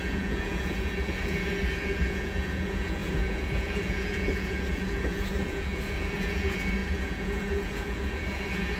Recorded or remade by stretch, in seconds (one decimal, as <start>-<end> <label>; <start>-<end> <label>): 0.0-8.8 remade